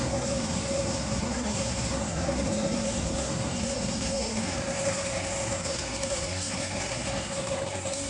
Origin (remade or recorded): remade